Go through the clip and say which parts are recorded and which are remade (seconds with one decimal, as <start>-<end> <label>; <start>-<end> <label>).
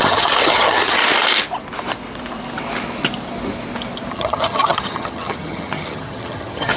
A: 0.0-1.0 remade; 1.0-4.1 recorded; 4.1-6.8 remade